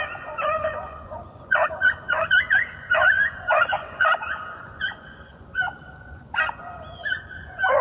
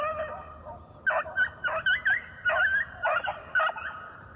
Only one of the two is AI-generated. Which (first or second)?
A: first